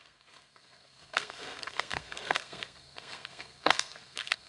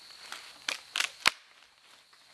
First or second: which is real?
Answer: second